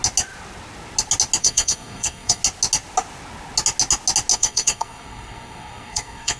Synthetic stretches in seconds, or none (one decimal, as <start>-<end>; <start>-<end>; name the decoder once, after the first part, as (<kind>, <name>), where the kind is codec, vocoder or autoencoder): 1.4-2.4 (codec, SNAC); 4.3-6.4